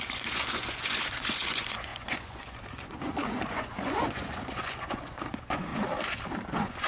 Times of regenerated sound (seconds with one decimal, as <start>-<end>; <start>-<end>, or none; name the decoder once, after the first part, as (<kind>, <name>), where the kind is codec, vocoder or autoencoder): 0.0-5.7 (vocoder, Vocos); 6.5-6.9